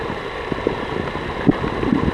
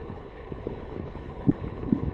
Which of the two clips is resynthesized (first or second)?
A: second